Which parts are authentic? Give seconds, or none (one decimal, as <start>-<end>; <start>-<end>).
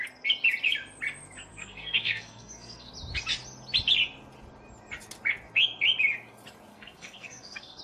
0.0-1.5; 2.9-6.7